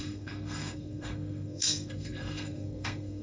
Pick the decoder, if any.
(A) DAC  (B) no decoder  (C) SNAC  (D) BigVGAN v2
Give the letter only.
C